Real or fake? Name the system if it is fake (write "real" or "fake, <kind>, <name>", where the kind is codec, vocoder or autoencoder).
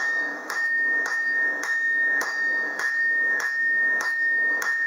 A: fake, autoencoder, DAC-VAE